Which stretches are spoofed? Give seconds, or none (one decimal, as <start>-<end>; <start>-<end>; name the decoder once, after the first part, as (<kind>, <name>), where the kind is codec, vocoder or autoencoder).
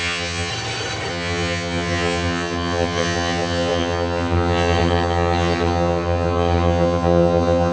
0.0-0.5 (vocoder, HiFi-GAN); 1.1-7.7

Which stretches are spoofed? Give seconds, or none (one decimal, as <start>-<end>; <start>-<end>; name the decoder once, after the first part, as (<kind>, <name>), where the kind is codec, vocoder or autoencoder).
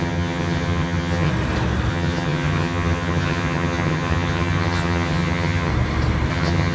0.0-1.3 (vocoder, HiFi-GAN); 1.9-5.7; 6.3-6.7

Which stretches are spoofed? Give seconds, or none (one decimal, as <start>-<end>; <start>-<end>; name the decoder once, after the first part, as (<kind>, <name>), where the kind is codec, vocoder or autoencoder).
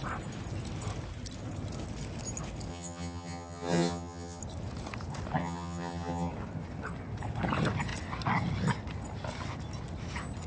2.7-4.4 (vocoder, HiFi-GAN); 5.4-6.3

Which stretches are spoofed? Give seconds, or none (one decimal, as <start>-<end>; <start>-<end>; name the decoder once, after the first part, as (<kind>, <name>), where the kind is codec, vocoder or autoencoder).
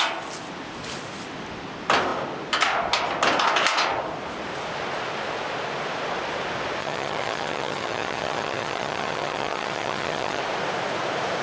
6.8-10.4 (vocoder, HiFi-GAN)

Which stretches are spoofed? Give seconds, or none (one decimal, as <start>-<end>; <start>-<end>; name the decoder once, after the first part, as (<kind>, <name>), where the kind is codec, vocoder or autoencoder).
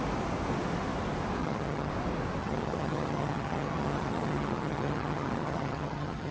1.4-1.9 (vocoder, HiFi-GAN); 2.4-6.3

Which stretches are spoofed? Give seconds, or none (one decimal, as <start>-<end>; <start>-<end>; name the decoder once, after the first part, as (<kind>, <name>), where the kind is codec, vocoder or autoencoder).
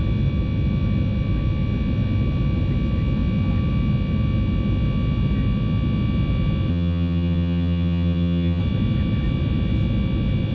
6.7-8.6 (vocoder, HiFi-GAN)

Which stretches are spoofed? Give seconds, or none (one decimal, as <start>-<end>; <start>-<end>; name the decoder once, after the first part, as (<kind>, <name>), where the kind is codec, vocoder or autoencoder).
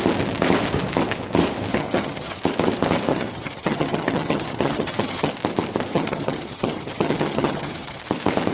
1.7-2.4 (vocoder, HiFi-GAN); 3.1-5.3; 5.9-8.0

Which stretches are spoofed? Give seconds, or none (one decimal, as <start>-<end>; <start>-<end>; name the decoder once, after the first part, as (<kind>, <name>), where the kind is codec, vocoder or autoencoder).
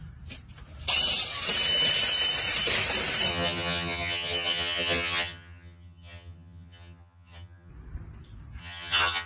3.3-7.7 (vocoder, HiFi-GAN); 8.6-9.3